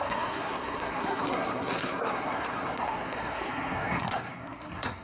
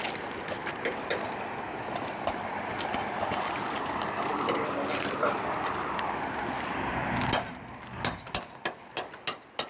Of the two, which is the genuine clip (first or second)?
second